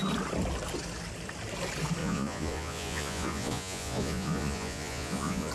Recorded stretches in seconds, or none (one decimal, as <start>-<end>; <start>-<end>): 0.0-2.0